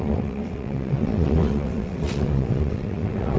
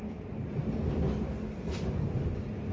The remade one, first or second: first